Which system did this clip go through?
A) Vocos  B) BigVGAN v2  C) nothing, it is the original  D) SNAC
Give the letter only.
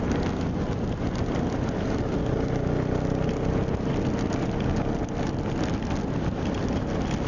C